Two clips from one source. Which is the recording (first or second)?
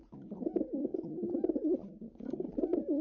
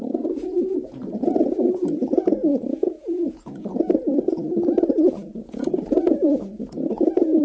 first